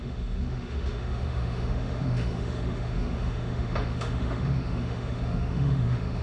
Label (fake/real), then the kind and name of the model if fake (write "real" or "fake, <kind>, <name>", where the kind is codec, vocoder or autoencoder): fake, autoencoder, DAC-VAE